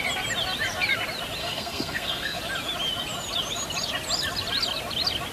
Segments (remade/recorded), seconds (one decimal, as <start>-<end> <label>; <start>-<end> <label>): 0.0-1.4 recorded; 1.4-2.4 remade; 2.4-5.3 recorded